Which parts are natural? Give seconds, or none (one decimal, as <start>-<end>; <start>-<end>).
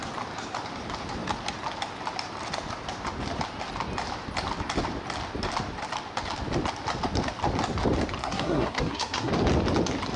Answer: 0.0-8.2; 9.3-10.2